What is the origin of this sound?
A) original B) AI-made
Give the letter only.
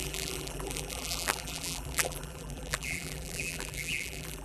B